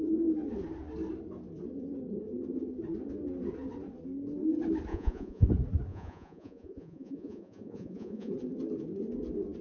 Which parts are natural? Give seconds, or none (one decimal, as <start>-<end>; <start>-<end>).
0.0-4.9; 5.5-5.9; 8.3-9.6